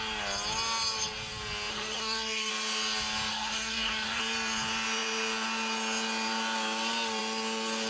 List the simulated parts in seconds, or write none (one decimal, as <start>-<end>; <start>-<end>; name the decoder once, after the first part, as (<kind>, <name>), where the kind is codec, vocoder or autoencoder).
1.7-2.5 (codec, SNAC); 3.3-4.2